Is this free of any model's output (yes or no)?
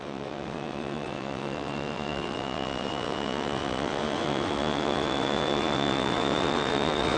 no